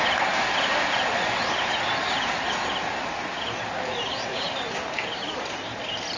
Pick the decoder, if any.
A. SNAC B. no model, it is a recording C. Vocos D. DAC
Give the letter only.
B